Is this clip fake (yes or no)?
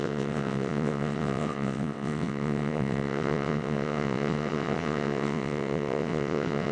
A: yes